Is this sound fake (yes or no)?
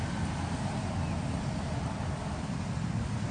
no